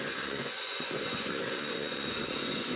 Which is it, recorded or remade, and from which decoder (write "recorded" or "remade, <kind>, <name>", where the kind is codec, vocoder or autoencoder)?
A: remade, vocoder, Vocos